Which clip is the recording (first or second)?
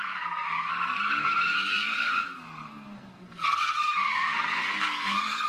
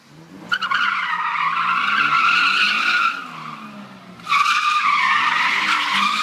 second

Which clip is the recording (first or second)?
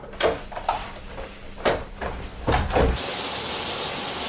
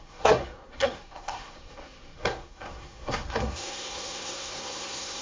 first